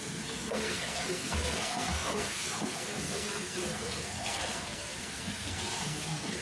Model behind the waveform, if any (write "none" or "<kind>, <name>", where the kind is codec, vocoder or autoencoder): codec, SNAC